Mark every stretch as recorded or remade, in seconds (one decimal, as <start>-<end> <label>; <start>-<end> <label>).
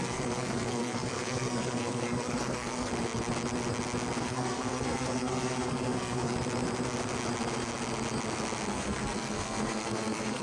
0.0-2.9 remade; 2.9-4.2 recorded; 4.2-6.3 remade; 6.3-8.7 recorded; 8.7-10.4 remade